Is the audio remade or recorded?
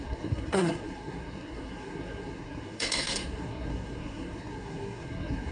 remade